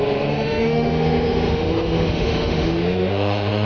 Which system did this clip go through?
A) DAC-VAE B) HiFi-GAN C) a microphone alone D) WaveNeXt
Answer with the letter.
A